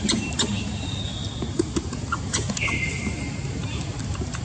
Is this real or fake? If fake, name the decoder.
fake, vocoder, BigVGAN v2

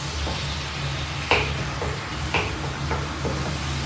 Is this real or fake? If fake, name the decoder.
real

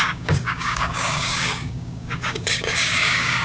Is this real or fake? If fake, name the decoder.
fake, codec, DAC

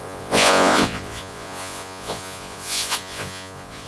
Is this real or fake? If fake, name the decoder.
fake, vocoder, Vocos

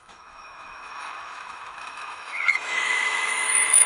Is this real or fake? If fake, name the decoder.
fake, autoencoder, DAC-VAE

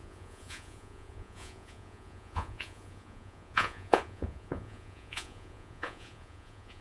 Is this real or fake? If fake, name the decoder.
fake, vocoder, Vocos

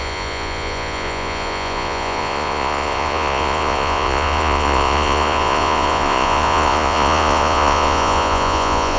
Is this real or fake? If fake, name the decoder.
fake, vocoder, Vocos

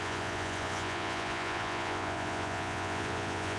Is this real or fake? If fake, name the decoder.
fake, vocoder, Vocos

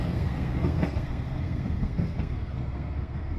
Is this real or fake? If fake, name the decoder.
fake, codec, SNAC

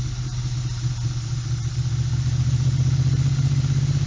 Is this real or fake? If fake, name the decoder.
real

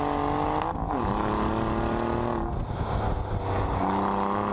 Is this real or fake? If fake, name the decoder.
real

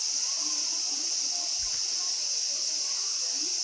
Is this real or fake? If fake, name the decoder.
real